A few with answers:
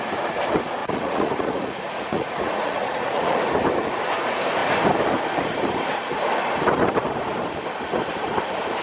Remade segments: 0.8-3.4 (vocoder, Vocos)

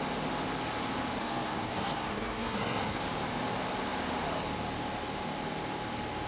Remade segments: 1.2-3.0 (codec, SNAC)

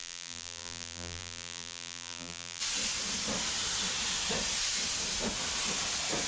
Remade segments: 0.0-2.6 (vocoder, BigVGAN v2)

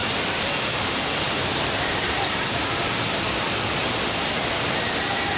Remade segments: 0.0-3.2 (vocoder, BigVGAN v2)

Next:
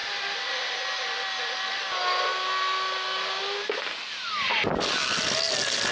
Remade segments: none

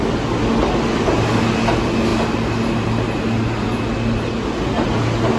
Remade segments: none